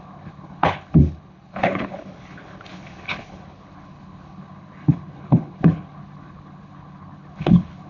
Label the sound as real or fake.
fake